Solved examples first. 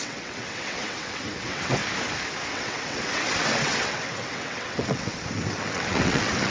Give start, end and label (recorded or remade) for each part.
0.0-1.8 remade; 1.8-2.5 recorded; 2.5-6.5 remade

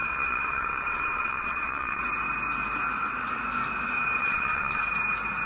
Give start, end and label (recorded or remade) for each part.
0.0-2.0 remade; 2.0-4.2 recorded; 4.2-4.8 remade; 4.8-5.5 recorded

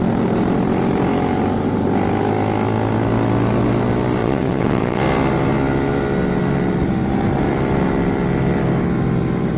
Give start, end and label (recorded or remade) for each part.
0.0-4.2 recorded; 4.2-5.0 remade; 5.0-9.6 recorded

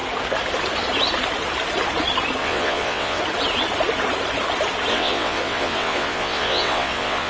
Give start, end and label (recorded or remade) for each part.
0.0-2.4 recorded; 2.4-3.2 remade; 3.2-4.9 recorded; 4.9-7.3 remade

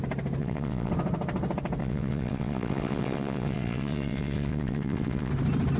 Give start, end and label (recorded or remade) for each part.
0.0-0.4 recorded; 0.4-0.9 remade; 0.9-1.8 recorded; 1.8-5.3 remade; 5.3-5.8 recorded